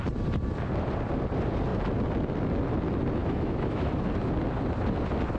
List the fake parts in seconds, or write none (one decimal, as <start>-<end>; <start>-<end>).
3.2-3.9

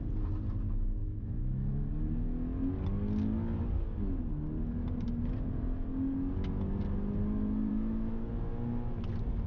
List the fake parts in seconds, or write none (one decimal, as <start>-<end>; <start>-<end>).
1.0-1.9; 7.7-8.3